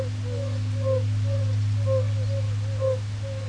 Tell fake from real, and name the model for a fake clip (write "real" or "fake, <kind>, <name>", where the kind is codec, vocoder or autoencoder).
real